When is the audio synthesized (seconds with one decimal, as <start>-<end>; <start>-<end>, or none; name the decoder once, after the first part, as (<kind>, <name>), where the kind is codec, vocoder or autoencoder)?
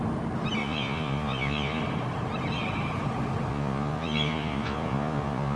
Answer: 0.6-1.8 (vocoder, Vocos); 3.5-5.6